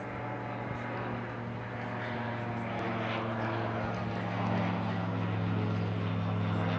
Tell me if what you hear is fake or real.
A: real